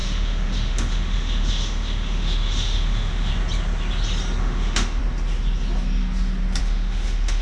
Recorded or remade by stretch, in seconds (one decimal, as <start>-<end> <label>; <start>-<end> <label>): 0.0-3.3 remade; 3.3-4.4 recorded; 4.4-5.0 remade; 5.0-6.6 recorded; 6.6-7.4 remade